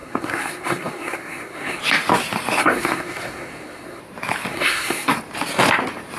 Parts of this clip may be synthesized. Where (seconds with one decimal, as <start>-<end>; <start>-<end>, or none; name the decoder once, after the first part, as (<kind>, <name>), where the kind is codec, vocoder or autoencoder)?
0.0-1.8 (codec, SNAC); 2.6-4.0; 4.5-5.1